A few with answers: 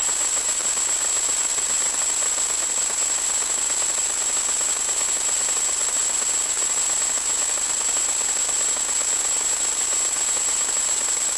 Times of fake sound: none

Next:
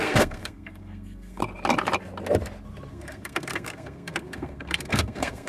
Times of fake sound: 0.0-1.4 (codec, SNAC); 2.9-5.5

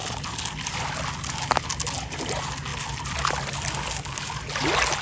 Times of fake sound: none